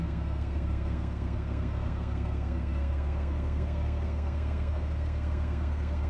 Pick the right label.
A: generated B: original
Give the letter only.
A